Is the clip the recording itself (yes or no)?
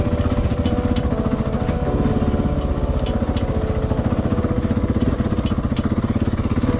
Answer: yes